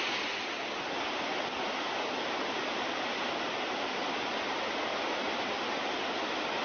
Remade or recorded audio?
recorded